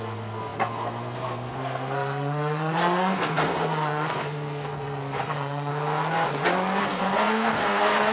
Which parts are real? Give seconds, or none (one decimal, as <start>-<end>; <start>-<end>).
5.7-6.8